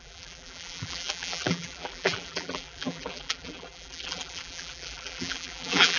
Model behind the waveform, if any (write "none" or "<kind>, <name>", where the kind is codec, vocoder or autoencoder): vocoder, BigVGAN v2